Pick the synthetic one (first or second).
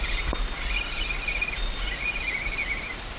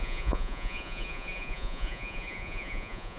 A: second